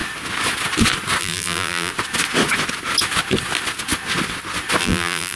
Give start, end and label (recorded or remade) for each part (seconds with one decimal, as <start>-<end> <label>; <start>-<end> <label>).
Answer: 0.0-1.2 recorded; 1.2-1.9 remade; 1.9-4.8 recorded; 4.8-5.4 remade